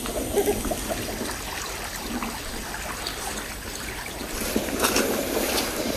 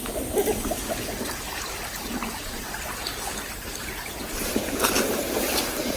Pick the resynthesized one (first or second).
second